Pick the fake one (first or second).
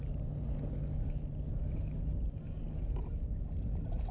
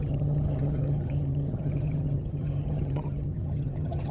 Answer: second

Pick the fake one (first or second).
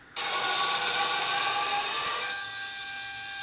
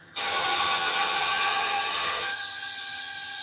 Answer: second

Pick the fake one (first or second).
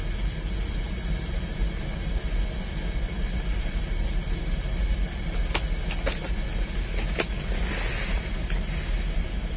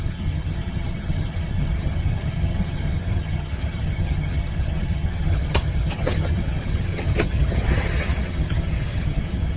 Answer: second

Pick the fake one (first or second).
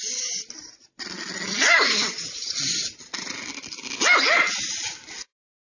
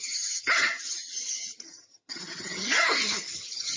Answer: second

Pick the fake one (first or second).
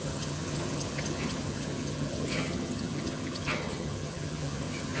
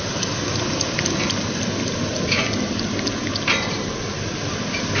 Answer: first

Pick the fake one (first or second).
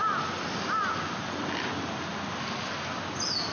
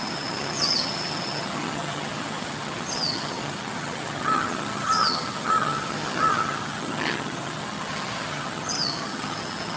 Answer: second